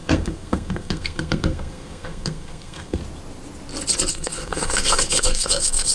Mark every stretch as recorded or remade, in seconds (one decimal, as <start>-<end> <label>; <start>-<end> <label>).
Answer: 0.0-3.0 remade; 3.0-4.1 recorded; 4.1-5.9 remade